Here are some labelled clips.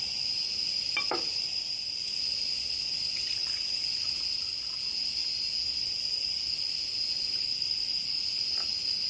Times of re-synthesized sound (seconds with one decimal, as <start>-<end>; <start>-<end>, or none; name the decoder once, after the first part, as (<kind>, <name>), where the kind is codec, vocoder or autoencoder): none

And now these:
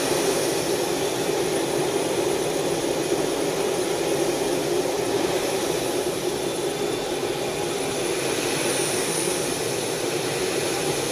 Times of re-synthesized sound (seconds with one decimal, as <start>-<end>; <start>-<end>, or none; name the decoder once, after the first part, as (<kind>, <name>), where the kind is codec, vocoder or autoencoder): 9.0-9.5 (autoencoder, DAC-VAE)

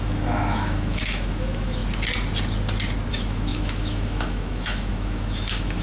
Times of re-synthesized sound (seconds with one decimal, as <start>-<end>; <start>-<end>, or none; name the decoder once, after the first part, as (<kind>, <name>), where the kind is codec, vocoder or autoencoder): 0.0-1.8 (autoencoder, DAC-VAE); 3.1-5.8

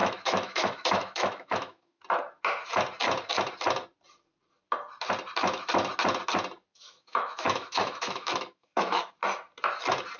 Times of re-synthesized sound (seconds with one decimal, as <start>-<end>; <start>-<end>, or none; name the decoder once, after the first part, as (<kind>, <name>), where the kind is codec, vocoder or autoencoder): 0.0-2.0 (autoencoder, DAC-VAE); 6.7-9.1